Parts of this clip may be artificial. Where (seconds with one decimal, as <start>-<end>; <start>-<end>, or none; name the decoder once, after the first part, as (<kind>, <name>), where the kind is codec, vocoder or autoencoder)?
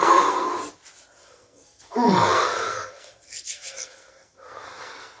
0.0-0.5 (codec, SNAC); 1.2-5.2